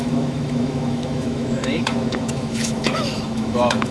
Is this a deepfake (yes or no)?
yes